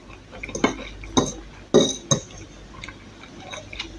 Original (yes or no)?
yes